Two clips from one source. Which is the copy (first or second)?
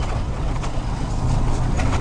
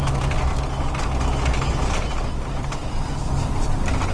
first